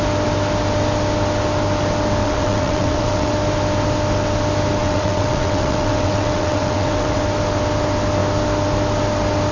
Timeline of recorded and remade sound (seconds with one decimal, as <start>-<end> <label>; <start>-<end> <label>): 0.0-2.2 recorded; 2.2-3.3 remade; 3.3-4.8 recorded; 4.8-7.2 remade; 7.2-9.5 recorded